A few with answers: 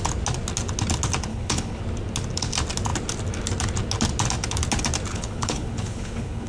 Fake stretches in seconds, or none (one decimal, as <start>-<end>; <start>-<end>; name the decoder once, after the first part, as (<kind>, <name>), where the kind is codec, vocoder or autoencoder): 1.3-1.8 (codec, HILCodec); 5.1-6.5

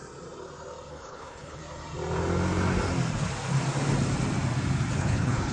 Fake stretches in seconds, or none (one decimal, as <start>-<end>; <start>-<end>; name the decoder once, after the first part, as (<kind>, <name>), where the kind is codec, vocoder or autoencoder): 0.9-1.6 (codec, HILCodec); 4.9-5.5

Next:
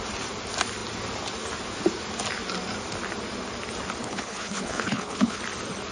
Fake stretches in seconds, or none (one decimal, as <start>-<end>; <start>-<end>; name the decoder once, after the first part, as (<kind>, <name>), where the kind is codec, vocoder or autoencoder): 4.0-5.4 (codec, HILCodec)

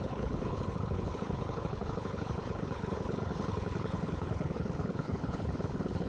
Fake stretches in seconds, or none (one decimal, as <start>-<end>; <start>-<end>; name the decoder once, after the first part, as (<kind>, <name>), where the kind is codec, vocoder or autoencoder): 0.0-6.1 (codec, HILCodec)